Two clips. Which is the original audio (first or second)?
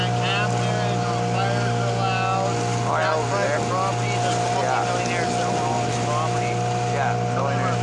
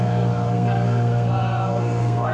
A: first